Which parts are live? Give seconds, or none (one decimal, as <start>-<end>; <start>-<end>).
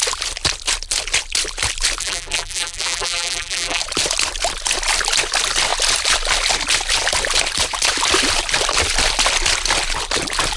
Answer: 0.0-2.0; 3.8-10.6